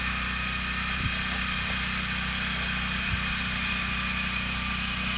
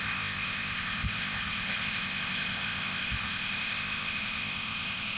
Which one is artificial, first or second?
second